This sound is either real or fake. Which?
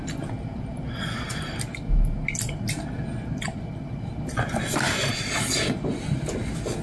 real